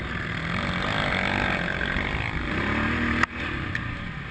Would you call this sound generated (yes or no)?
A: no